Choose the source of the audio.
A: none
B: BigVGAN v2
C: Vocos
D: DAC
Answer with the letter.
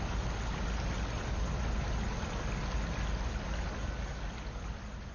A